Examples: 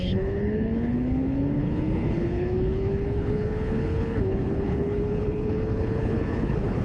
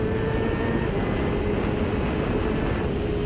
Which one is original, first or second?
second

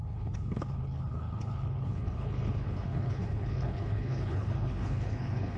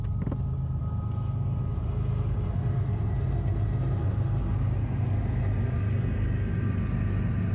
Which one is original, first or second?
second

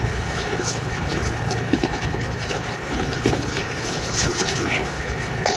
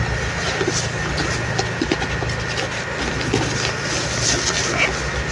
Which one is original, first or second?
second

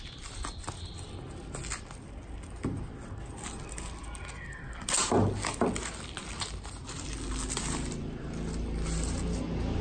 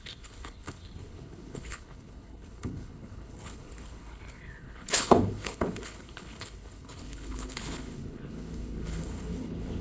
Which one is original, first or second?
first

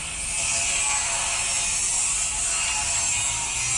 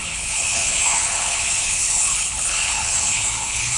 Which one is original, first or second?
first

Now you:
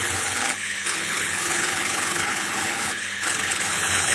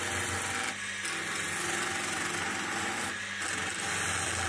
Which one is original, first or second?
second